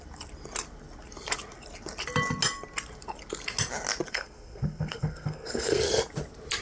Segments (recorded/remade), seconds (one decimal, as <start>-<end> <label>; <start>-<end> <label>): 0.0-4.1 recorded; 4.1-5.8 remade; 5.8-6.6 recorded